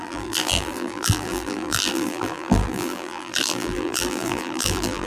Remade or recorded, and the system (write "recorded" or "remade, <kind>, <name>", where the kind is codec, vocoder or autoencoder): remade, vocoder, BigVGAN v2